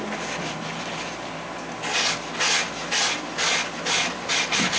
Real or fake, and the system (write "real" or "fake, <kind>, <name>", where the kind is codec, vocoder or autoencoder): real